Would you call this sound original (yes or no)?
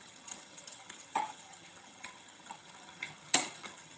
no